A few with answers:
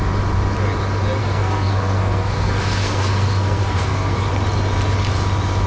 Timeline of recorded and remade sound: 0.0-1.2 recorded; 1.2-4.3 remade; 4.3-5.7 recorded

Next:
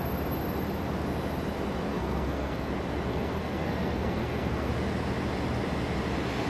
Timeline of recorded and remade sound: 0.0-1.9 recorded; 1.9-2.7 remade; 2.7-3.1 recorded; 3.1-4.7 remade; 4.7-6.5 recorded